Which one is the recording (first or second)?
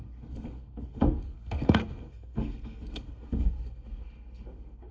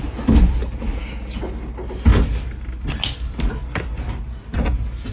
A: second